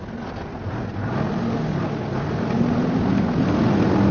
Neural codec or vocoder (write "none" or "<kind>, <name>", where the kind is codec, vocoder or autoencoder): none